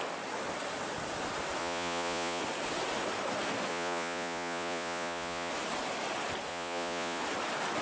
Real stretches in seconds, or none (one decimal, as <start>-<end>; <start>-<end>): 0.0-1.6; 2.4-3.7; 5.5-6.5; 7.2-7.8